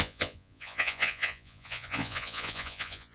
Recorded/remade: remade